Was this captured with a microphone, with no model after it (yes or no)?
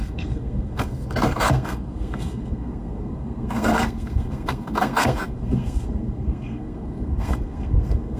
no